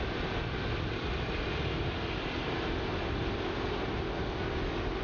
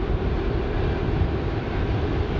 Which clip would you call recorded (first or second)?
first